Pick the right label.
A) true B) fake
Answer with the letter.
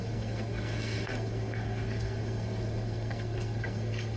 B